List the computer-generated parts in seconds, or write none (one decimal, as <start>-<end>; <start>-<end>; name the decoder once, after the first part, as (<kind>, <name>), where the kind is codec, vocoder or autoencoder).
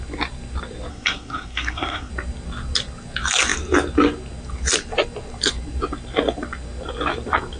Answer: 0.9-2.1 (codec, SNAC)